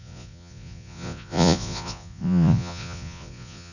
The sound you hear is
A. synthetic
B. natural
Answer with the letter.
A